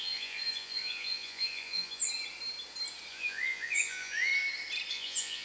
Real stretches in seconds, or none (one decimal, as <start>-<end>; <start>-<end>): 2.0-3.1; 4.3-4.9